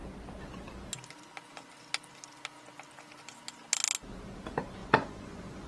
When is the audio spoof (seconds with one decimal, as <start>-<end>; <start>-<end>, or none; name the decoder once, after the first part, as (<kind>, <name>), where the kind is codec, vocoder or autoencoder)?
4.8-5.7 (vocoder, Vocos)